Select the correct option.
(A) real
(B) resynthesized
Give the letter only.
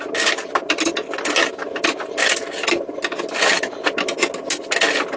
A